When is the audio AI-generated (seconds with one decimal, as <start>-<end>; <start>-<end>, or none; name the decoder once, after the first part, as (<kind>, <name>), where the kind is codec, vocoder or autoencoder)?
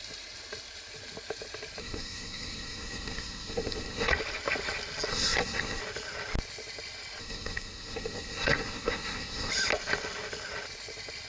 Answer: 1.8-4.1 (codec, SNAC); 5.1-5.8; 7.2-9.5